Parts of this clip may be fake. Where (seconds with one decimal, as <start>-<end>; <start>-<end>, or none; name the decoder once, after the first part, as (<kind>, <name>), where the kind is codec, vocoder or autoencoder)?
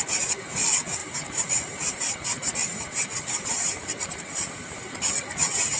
1.0-2.0 (vocoder, BigVGAN v2); 2.6-4.7